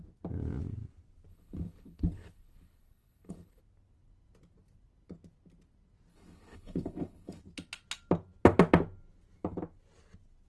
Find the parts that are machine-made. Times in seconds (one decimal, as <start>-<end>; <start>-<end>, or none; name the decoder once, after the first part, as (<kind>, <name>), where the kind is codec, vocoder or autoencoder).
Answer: 1.3-3.6 (codec, HILCodec); 6.1-7.4